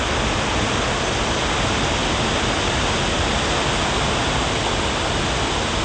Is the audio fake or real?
real